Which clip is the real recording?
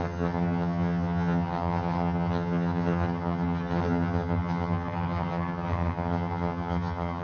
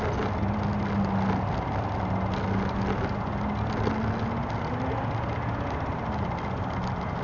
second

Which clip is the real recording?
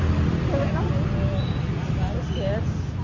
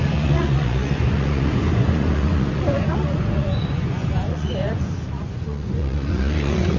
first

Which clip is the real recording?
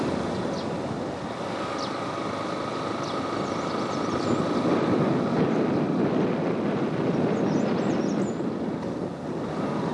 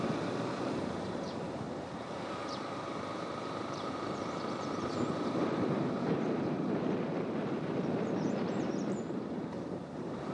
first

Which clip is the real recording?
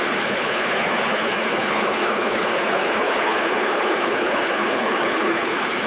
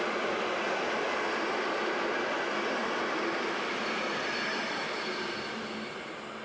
second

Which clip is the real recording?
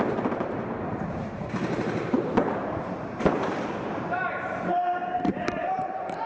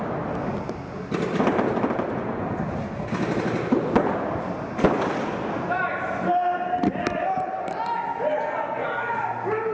second